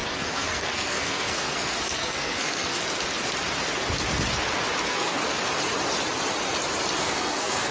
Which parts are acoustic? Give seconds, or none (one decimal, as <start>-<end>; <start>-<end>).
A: 2.8-4.8; 5.2-7.0